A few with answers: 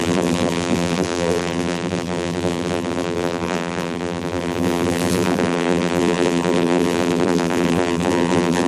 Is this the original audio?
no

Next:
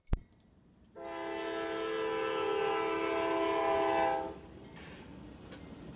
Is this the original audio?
yes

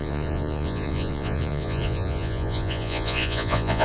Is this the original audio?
no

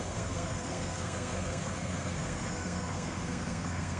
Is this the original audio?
no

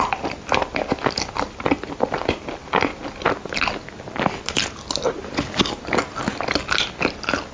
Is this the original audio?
yes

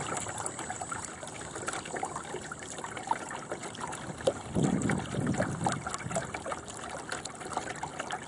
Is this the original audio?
yes